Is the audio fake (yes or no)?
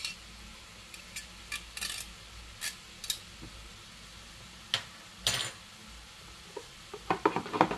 no